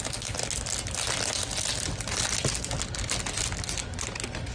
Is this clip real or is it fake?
real